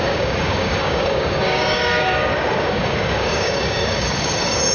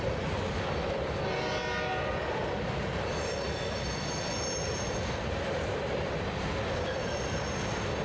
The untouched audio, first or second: second